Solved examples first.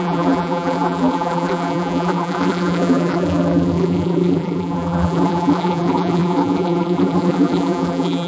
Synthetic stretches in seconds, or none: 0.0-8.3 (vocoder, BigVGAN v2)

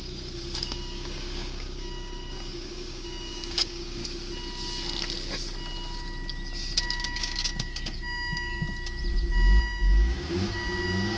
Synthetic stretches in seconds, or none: 0.0-4.0 (codec, DAC); 6.8-8.5; 9.6-11.2

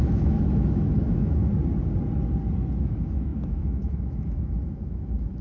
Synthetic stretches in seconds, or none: 0.0-1.4 (autoencoder, DAC-VAE); 2.8-5.4

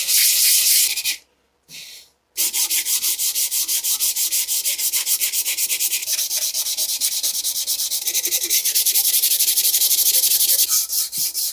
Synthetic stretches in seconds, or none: 2.6-4.1 (vocoder, BigVGAN v2); 6.0-7.4; 8.6-10.0

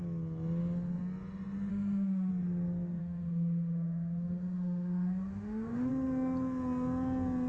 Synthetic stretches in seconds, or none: 1.7-2.3 (autoencoder, DAC-VAE); 3.0-5.9

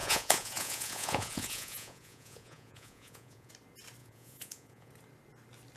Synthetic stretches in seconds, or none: 0.0-3.5 (vocoder, Vocos); 4.0-4.9

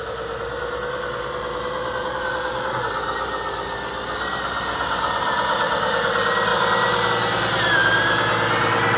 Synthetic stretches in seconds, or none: none

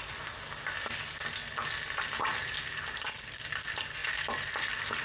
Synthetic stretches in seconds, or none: 4.0-4.5 (vocoder, BigVGAN v2)